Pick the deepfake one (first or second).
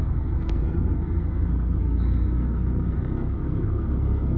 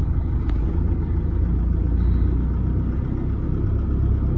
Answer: first